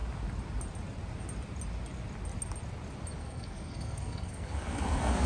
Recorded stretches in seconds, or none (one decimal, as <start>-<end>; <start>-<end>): 0.0-3.2